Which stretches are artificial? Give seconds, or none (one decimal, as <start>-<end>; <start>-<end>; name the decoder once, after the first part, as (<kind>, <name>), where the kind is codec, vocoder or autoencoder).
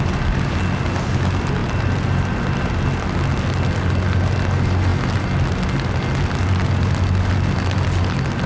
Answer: none